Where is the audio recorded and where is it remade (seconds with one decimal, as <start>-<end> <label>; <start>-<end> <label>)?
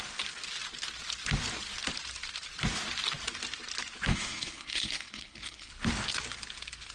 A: 0.0-4.1 recorded; 4.1-5.7 remade; 5.7-6.9 recorded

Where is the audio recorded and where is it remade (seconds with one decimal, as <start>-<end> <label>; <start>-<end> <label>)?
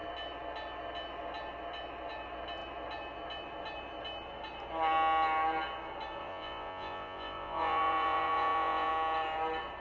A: 0.0-6.2 recorded; 6.2-8.9 remade; 8.9-9.8 recorded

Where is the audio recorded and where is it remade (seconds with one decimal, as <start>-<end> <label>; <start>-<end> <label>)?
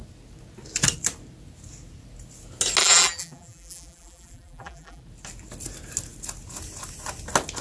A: 0.0-2.8 recorded; 2.8-5.0 remade; 5.0-7.6 recorded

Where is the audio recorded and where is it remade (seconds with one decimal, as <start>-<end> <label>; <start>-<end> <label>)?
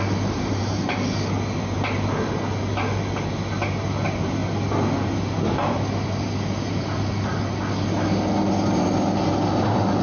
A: 0.0-10.0 recorded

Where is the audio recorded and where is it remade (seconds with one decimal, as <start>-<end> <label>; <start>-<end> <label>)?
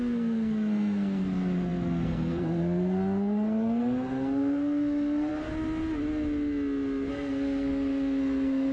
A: 0.0-5.3 remade; 5.3-7.1 recorded; 7.1-8.7 remade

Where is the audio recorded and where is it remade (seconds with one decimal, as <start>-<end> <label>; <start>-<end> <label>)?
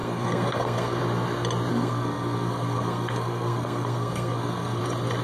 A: 0.0-1.0 remade; 1.0-1.7 recorded; 1.7-4.8 remade; 4.8-5.2 recorded